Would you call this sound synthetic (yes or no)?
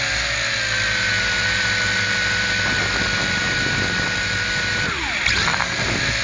no